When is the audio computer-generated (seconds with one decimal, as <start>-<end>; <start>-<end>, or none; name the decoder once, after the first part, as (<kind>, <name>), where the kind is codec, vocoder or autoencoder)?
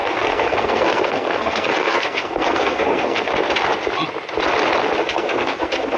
0.0-3.3 (codec, SNAC); 5.0-6.0